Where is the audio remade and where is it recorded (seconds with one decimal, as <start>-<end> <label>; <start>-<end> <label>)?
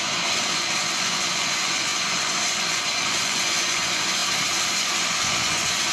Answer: 0.0-4.2 remade; 4.2-4.7 recorded; 4.7-5.9 remade